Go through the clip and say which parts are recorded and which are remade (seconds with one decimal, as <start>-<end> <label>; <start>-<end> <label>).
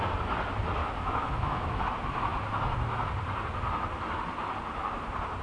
0.0-0.8 recorded; 0.8-1.8 remade; 1.8-5.4 recorded